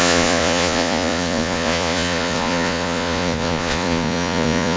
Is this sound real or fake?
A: fake